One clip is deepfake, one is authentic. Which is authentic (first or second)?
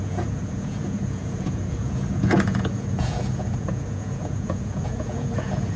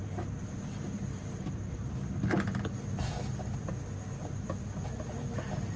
second